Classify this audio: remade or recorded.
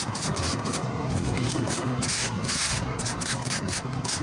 remade